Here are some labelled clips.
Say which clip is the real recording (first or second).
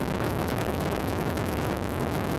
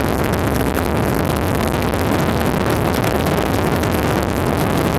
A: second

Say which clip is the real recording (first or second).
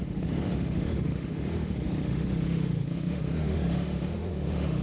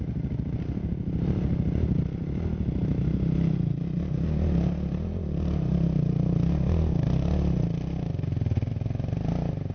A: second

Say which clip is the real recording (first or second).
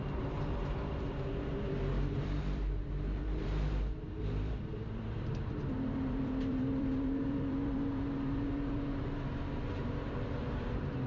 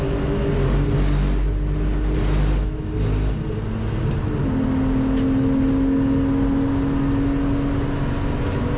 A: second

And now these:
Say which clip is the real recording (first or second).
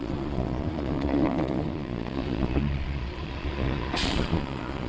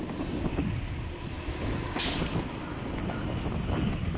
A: second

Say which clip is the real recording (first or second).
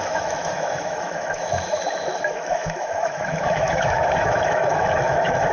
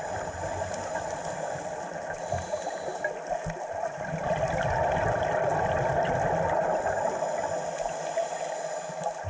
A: second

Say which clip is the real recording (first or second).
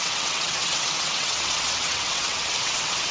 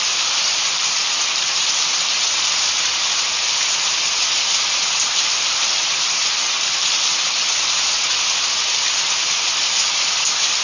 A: second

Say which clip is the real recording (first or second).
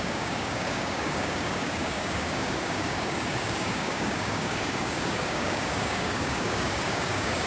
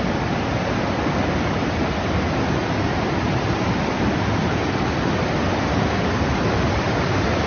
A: second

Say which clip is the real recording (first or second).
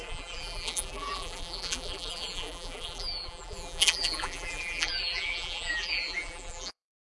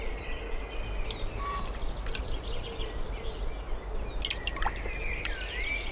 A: second